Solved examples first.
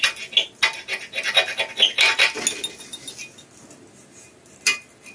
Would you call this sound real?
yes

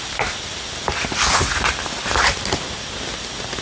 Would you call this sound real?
yes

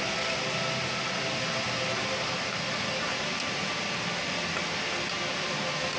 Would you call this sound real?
yes